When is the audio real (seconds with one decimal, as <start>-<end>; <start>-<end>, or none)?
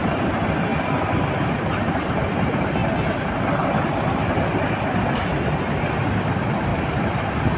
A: 0.0-6.7